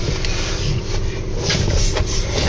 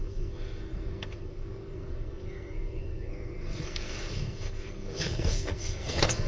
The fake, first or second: second